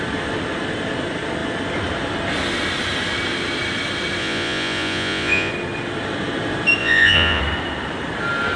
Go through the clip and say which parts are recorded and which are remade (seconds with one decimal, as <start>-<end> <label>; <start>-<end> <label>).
0.0-4.2 recorded; 4.2-5.5 remade; 5.5-6.8 recorded; 6.8-7.4 remade; 7.4-8.6 recorded